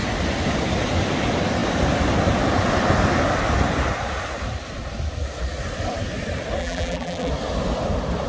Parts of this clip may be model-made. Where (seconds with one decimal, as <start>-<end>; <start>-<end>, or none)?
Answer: 6.6-7.3